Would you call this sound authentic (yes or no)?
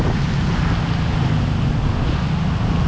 yes